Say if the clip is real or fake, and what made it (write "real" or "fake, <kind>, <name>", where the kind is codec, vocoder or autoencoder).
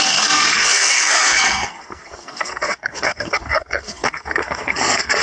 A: fake, codec, SNAC